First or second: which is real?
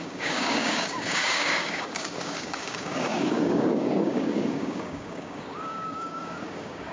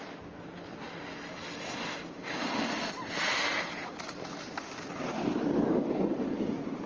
second